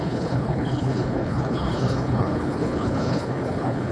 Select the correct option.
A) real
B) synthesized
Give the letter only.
B